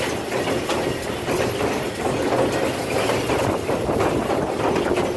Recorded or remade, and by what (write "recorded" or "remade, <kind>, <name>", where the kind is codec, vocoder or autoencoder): recorded